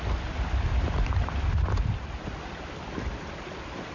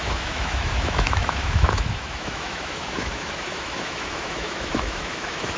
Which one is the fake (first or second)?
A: second